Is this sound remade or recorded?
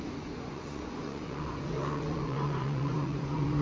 remade